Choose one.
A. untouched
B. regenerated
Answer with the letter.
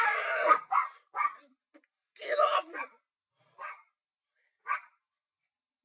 A